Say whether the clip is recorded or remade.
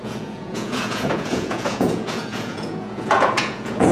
remade